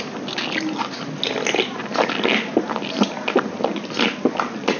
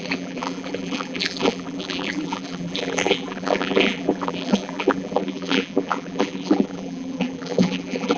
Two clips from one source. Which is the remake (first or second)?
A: second